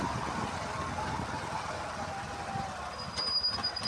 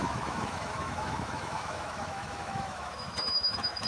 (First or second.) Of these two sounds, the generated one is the second